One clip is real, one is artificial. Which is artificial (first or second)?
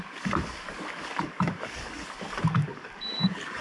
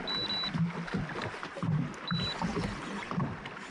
first